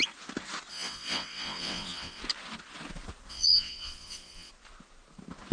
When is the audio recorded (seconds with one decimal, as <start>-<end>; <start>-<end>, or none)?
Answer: 0.0-0.7; 2.2-3.3; 4.5-5.5